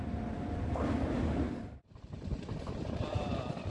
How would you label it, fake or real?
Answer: fake